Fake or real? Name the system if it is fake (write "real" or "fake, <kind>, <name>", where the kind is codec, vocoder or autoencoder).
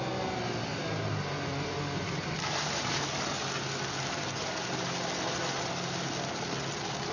real